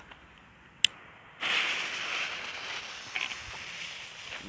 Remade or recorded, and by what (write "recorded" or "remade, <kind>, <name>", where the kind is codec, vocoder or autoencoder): recorded